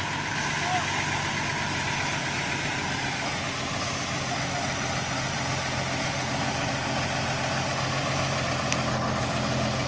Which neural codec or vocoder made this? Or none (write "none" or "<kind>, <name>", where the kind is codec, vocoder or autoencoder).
none